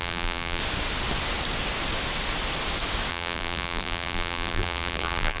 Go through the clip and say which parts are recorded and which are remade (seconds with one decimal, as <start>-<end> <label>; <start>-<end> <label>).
0.0-0.6 remade; 0.6-3.1 recorded; 3.1-5.4 remade